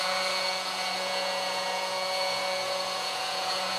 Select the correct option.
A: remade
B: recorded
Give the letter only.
A